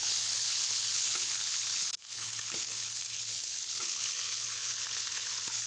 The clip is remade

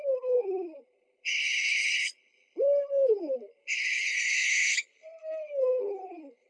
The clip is remade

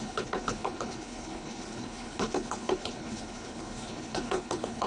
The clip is remade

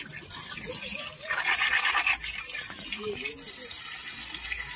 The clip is recorded